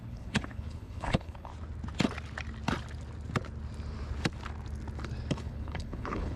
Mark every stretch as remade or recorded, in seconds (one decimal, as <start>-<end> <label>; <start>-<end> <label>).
0.0-1.5 remade; 1.5-5.3 recorded; 5.3-6.4 remade